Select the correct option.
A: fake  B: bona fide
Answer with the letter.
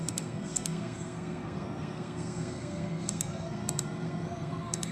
A